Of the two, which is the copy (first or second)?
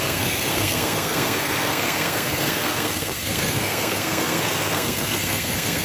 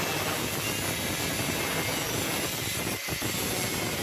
first